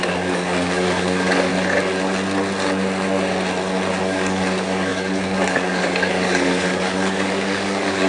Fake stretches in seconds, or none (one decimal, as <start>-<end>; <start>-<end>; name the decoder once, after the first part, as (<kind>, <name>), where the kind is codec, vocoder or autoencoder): 0.0-1.5 (codec, DAC); 4.0-8.1